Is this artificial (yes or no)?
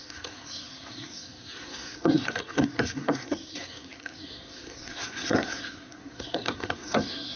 yes